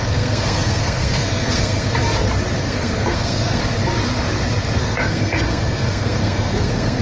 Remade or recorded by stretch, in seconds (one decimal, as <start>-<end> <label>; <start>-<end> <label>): 0.0-1.9 remade; 1.9-2.6 recorded; 2.6-3.6 remade; 3.6-4.8 recorded; 4.8-7.0 remade